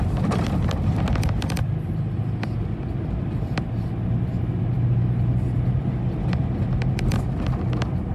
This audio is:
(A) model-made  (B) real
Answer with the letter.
B